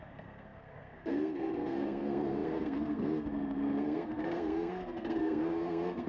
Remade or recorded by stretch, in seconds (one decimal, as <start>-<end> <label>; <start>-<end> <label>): 0.0-6.1 remade